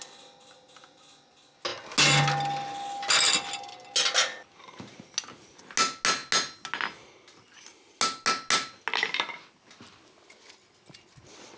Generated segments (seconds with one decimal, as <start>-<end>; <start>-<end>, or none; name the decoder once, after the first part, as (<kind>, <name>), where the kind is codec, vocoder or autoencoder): none